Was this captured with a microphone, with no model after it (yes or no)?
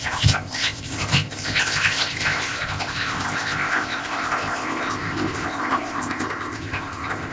no